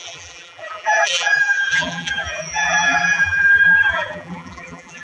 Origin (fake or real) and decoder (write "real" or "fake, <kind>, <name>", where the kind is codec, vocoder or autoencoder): fake, vocoder, BigVGAN v2